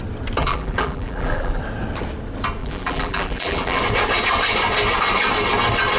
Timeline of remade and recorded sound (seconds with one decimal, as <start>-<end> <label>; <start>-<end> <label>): 0.0-0.4 recorded; 0.4-1.6 remade; 1.6-2.6 recorded; 2.6-3.8 remade; 3.8-6.0 recorded